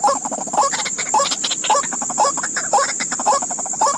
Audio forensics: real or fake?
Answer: real